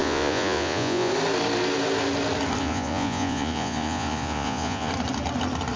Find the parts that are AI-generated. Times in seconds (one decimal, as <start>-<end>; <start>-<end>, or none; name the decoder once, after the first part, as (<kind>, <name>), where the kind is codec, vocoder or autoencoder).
0.0-1.1 (vocoder, Vocos); 2.6-4.9